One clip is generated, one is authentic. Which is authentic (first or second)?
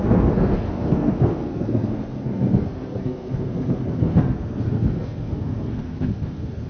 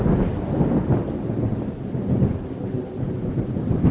second